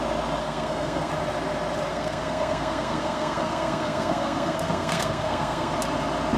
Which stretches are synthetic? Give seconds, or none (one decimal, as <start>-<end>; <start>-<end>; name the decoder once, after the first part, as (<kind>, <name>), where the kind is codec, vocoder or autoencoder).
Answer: 0.4-1.1 (codec, SNAC); 1.9-5.7